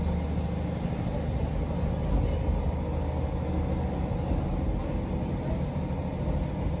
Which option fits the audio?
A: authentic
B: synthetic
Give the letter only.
A